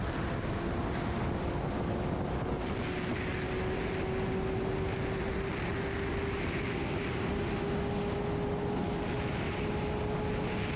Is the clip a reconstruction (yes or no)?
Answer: no